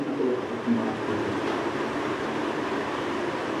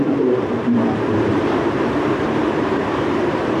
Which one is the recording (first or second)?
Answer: first